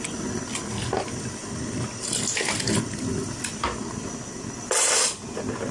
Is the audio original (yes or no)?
yes